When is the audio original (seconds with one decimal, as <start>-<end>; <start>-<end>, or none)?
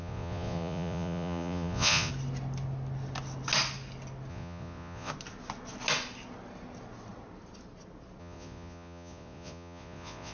2.1-4.3; 5.1-8.2